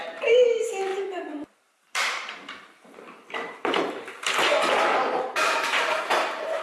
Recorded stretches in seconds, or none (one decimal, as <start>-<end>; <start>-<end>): none